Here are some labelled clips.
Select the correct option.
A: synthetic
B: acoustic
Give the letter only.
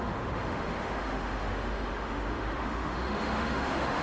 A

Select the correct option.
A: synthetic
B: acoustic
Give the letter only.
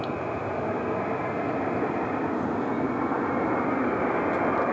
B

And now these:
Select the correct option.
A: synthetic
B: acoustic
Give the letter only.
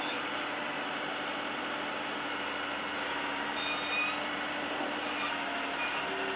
B